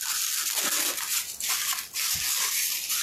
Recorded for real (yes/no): yes